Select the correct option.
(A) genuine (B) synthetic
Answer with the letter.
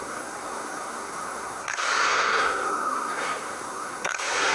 B